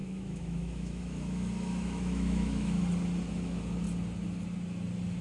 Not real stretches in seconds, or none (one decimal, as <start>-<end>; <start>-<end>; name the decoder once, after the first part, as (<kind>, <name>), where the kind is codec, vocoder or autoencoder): 0.0-2.8 (autoencoder, DAC-VAE)